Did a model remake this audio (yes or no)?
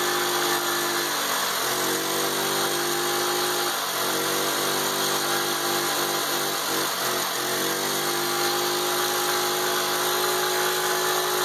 no